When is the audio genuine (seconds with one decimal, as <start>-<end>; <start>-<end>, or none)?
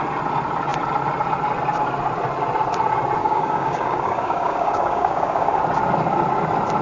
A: 0.0-3.2; 5.6-6.8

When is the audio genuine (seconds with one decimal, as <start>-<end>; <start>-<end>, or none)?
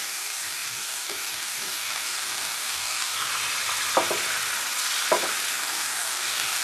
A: 3.3-5.5